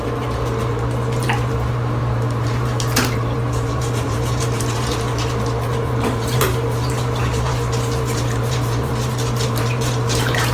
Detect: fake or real fake